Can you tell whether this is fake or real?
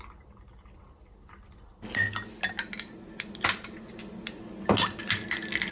real